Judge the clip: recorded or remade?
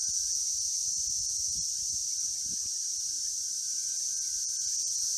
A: remade